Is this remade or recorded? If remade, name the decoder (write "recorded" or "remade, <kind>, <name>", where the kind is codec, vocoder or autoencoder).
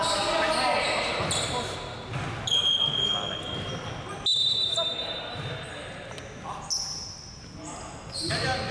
recorded